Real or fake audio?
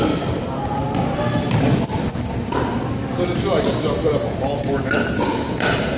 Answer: real